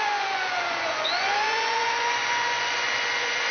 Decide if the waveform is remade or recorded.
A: remade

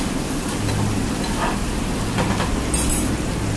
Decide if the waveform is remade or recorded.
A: recorded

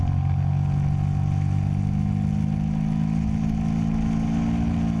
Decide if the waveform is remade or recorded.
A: recorded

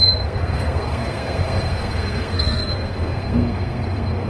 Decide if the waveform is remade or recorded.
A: remade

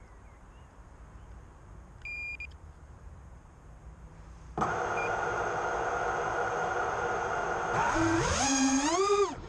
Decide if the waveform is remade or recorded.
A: remade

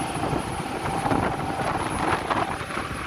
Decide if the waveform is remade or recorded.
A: recorded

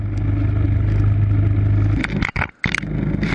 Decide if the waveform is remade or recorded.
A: recorded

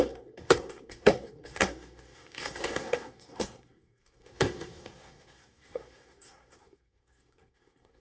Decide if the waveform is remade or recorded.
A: remade